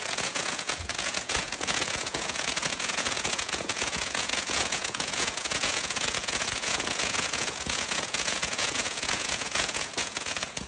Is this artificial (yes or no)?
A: yes